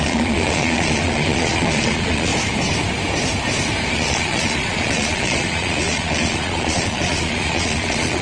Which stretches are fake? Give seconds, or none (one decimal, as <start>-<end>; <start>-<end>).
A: 0.0-2.3; 3.9-8.2